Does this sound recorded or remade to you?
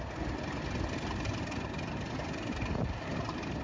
recorded